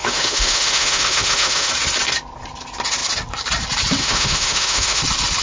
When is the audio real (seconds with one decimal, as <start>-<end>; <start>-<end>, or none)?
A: 1.7-4.0; 5.0-5.4